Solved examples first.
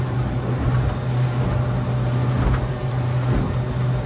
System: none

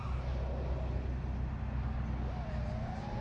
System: none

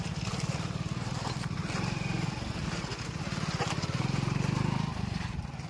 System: none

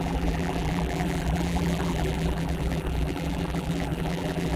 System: vocoder, BigVGAN v2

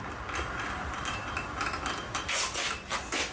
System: none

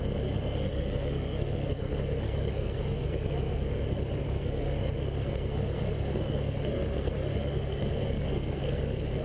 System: codec, SNAC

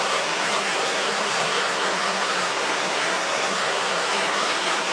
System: codec, SNAC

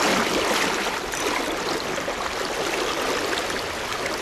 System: none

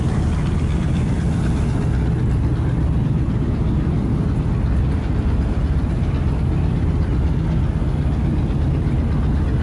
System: none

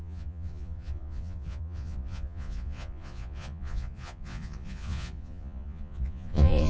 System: vocoder, Vocos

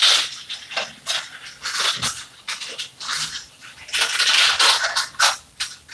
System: none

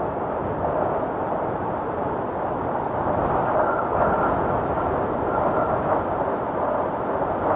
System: none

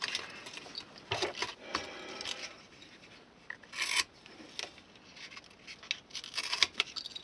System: none